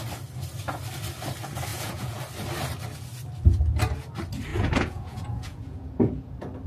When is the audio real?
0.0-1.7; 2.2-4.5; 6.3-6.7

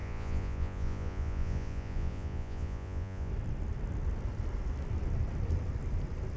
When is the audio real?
3.3-6.4